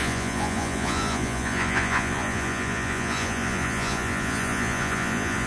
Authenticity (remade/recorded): remade